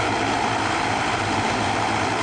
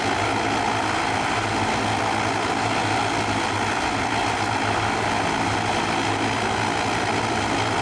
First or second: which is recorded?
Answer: second